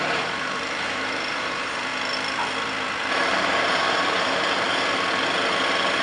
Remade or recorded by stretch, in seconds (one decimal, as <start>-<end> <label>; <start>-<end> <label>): 0.0-1.9 remade; 1.9-3.1 recorded; 3.1-4.7 remade; 4.7-6.0 recorded